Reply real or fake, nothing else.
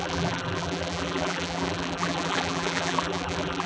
fake